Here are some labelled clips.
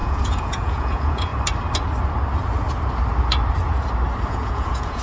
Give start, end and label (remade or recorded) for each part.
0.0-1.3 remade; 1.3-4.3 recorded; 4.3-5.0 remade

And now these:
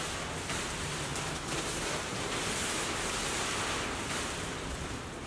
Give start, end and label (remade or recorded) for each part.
0.0-5.3 recorded

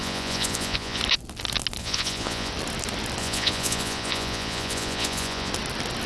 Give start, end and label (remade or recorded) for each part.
0.0-1.0 remade; 1.0-1.8 recorded; 1.8-2.5 remade; 2.5-3.2 recorded; 3.2-5.5 remade; 5.5-6.1 recorded

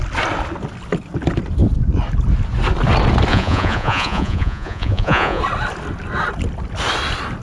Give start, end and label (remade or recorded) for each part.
0.0-3.3 recorded; 3.3-5.4 remade; 5.4-7.4 recorded